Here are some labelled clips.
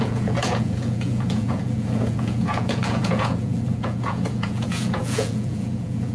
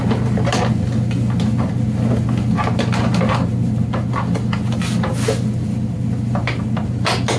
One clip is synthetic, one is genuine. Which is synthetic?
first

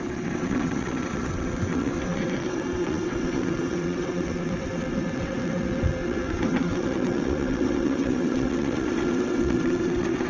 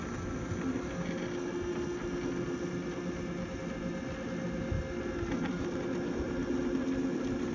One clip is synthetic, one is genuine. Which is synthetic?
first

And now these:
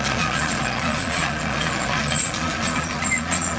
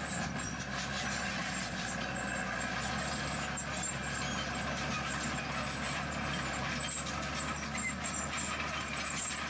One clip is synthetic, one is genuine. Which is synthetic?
first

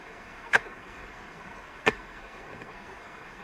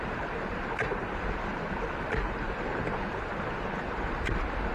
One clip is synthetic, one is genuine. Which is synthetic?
first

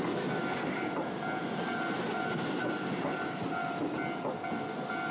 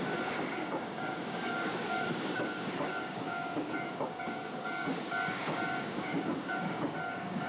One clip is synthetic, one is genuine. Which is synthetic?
second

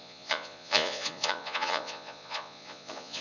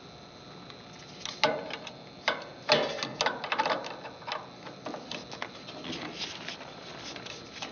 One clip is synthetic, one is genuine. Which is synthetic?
first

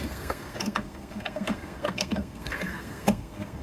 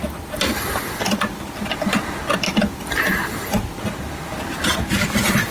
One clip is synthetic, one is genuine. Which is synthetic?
first